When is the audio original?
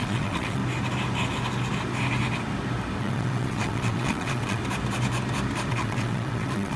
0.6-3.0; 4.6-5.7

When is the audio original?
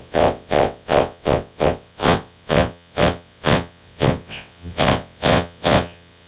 none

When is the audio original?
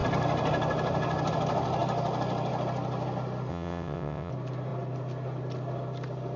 0.0-3.5; 4.3-6.4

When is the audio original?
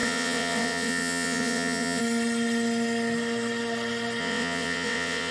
2.0-4.2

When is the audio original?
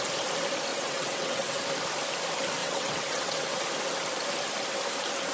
0.0-0.7; 1.6-2.6; 3.6-5.3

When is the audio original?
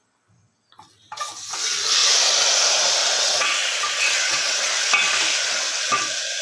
0.0-3.0; 4.7-6.4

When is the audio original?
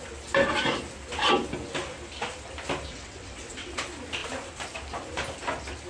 0.0-2.9; 3.8-5.9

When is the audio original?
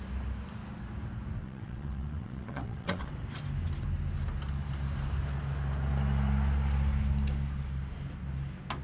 0.0-1.4; 3.1-8.8